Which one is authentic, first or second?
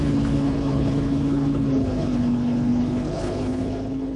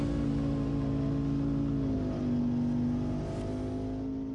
second